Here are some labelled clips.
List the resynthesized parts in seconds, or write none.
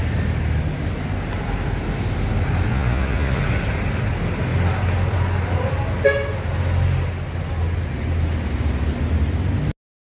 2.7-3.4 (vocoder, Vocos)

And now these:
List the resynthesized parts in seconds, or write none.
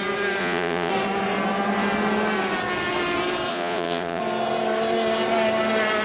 0.4-0.9 (vocoder, Vocos); 3.5-4.2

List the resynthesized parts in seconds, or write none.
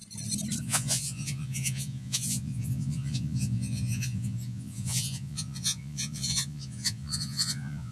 0.6-7.9 (vocoder, Vocos)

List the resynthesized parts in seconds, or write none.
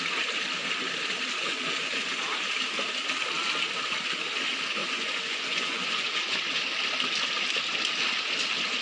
1.4-2.2 (vocoder, Vocos); 4.8-6.3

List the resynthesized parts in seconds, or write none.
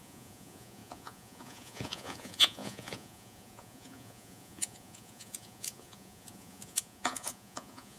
0.0-8.0 (vocoder, Vocos)